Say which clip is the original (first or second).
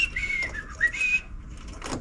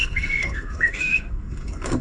first